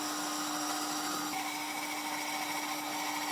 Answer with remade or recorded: recorded